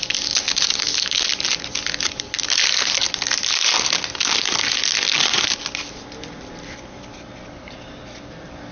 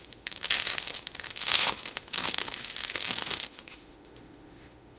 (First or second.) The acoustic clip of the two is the first